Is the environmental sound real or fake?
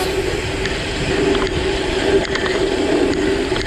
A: real